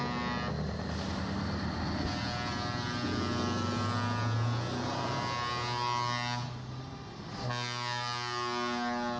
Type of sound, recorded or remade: recorded